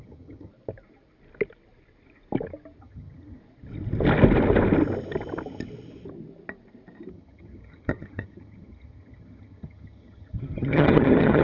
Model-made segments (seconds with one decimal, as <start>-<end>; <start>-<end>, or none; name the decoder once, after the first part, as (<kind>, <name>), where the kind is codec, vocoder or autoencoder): 0.0-0.5 (vocoder, HiFi-GAN); 2.8-3.4; 7.1-11.4

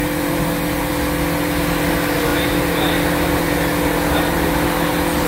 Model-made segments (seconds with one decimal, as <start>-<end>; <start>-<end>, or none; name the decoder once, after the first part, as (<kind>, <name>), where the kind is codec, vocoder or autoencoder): 0.0-0.9 (vocoder, BigVGAN v2)